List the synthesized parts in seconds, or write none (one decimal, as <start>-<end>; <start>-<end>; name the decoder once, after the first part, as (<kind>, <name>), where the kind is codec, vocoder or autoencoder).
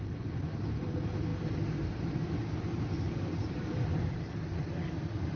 none